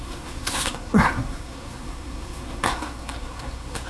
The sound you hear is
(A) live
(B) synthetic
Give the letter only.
B